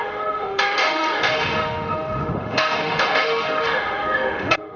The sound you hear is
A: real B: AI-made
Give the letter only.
B